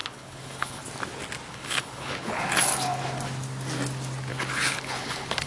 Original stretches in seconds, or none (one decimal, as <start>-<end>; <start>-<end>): 0.8-1.5; 2.4-4.3